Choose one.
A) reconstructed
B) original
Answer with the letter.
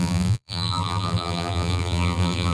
A